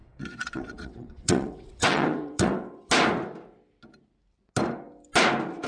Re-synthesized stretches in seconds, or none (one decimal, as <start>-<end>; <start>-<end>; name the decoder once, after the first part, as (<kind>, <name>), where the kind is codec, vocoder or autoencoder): 0.0-2.9 (vocoder, WaveNeXt)